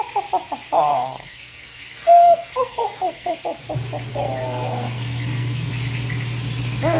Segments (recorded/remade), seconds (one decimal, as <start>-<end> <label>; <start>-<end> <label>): 0.0-0.9 recorded; 0.9-3.4 remade; 3.4-4.1 recorded; 4.1-5.7 remade; 5.7-7.0 recorded